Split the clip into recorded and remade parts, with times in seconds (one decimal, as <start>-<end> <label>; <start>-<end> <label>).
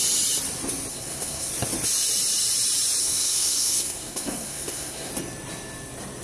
0.0-0.9 recorded; 0.9-1.5 remade; 1.5-3.0 recorded; 3.0-5.1 remade; 5.1-6.2 recorded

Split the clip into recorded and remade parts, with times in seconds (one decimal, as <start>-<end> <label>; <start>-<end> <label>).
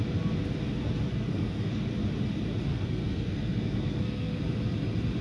0.0-1.1 recorded; 1.1-1.8 remade; 1.8-2.7 recorded; 2.7-4.4 remade; 4.4-5.2 recorded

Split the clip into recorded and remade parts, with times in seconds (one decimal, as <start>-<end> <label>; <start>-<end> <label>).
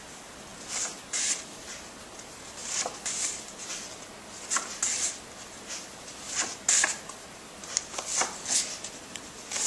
0.0-9.7 recorded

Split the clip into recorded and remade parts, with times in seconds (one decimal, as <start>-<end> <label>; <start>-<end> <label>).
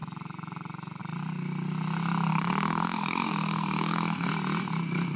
0.0-2.3 recorded; 2.3-4.3 remade; 4.3-5.2 recorded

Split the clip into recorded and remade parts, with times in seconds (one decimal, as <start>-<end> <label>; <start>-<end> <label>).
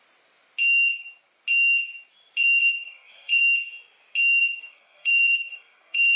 0.0-2.6 recorded; 2.6-3.4 remade; 3.4-4.4 recorded; 4.4-6.2 remade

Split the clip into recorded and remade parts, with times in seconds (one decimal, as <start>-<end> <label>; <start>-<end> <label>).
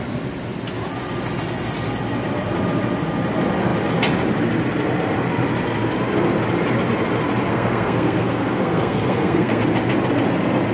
0.0-7.5 recorded; 7.5-9.6 remade; 9.6-10.7 recorded